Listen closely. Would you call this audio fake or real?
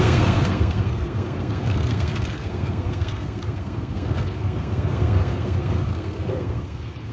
fake